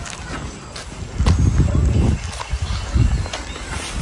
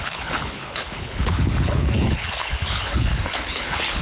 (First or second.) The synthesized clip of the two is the second